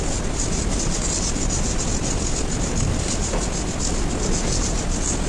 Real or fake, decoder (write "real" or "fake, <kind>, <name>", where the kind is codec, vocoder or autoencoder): real